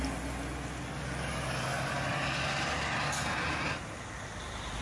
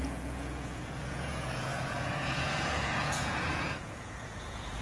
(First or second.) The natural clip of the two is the first